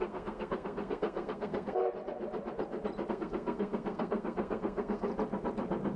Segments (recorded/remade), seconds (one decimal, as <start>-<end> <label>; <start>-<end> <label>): 0.0-1.8 remade; 1.8-3.1 recorded; 3.1-5.1 remade; 5.1-6.0 recorded